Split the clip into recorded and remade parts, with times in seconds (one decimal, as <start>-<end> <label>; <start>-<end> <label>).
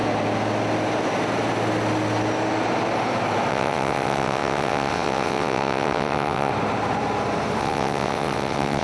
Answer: 0.0-3.5 recorded; 3.5-6.5 remade; 6.5-7.6 recorded; 7.6-8.8 remade